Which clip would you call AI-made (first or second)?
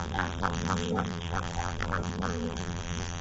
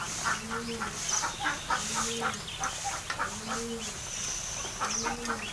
first